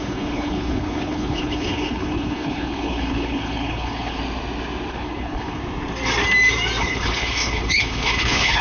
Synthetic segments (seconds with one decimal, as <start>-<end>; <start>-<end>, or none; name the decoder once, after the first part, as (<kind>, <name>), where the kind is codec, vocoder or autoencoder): 0.0-4.2 (codec, HILCodec); 4.9-5.6; 6.8-8.6